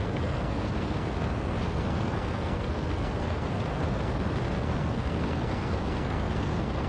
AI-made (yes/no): yes